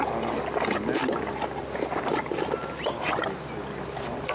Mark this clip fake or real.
real